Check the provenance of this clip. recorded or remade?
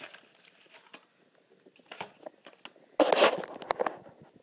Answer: recorded